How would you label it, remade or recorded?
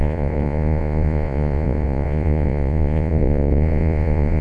remade